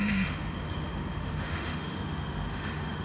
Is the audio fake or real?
fake